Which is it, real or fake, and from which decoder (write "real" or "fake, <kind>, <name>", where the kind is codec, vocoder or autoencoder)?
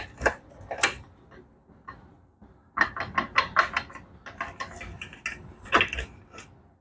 real